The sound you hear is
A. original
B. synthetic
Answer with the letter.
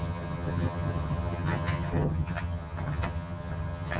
B